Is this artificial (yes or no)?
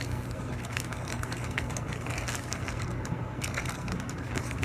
yes